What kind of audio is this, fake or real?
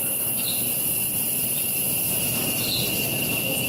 real